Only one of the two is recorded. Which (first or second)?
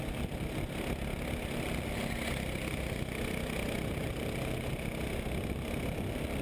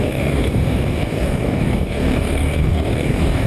first